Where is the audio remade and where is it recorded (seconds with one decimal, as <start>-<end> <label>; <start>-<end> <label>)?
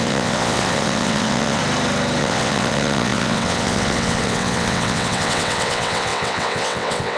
0.0-1.6 remade; 1.6-2.2 recorded; 2.2-7.2 remade